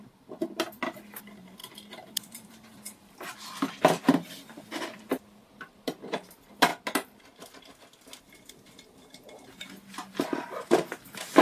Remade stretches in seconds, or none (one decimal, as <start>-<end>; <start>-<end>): 1.6-5.0